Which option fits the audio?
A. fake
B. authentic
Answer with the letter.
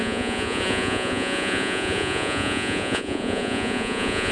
A